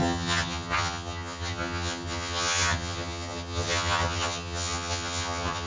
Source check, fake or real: fake